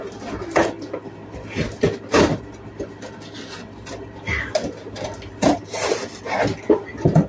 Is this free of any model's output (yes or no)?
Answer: yes